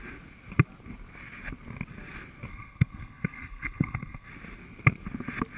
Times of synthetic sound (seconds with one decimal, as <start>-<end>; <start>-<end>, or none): 2.5-4.3